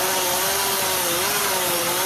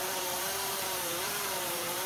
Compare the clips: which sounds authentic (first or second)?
first